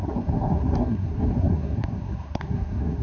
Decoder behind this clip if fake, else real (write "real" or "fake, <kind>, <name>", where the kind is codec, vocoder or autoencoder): fake, codec, SNAC